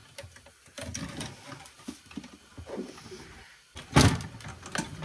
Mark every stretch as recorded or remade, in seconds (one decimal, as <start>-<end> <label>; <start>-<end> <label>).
0.0-5.0 recorded